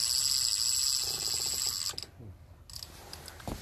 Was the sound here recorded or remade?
recorded